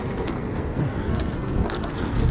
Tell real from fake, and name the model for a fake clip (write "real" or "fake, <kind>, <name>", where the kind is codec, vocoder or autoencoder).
fake, codec, SNAC